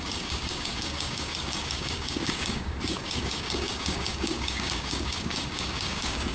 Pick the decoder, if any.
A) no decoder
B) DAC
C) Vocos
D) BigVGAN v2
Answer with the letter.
B